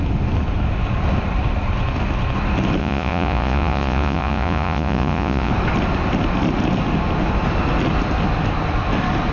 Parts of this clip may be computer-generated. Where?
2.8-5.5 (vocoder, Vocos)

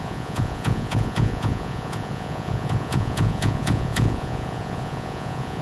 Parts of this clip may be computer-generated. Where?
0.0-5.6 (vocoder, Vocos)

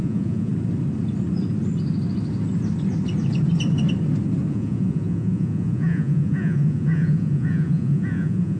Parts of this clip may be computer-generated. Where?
0.0-0.5 (vocoder, Vocos); 4.5-8.6

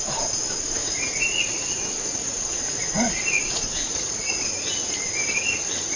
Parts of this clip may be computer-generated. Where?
0.8-4.4 (vocoder, Vocos)

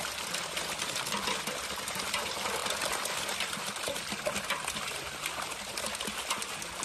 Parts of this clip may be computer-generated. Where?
none

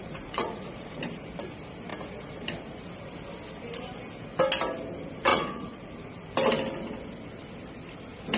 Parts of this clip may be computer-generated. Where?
0.0-1.0 (vocoder, Vocos); 5.3-5.9

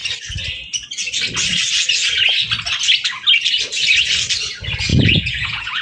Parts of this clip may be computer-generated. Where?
4.9-5.8 (vocoder, Vocos)